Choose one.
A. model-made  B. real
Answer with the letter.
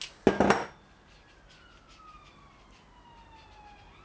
B